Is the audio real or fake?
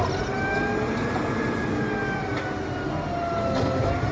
real